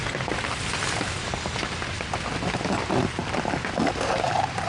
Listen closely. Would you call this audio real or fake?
real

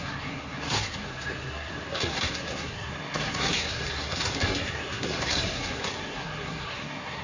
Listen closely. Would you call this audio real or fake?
fake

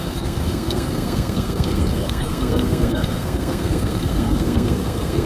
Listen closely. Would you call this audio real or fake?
fake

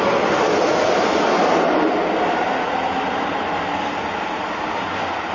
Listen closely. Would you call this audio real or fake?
real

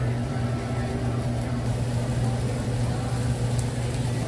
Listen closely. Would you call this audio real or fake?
real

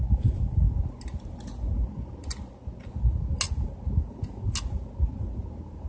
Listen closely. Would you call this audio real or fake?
real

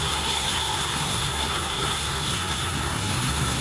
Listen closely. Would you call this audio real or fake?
fake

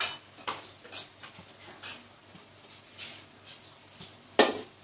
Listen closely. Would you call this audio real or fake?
real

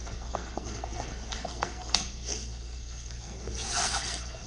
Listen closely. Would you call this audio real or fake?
fake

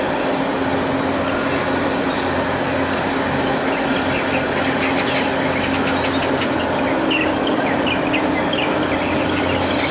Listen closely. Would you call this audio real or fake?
real